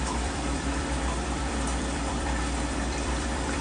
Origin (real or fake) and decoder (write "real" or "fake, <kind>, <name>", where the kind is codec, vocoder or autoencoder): fake, vocoder, BigVGAN v2